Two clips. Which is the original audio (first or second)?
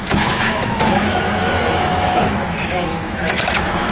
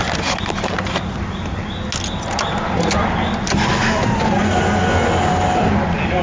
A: second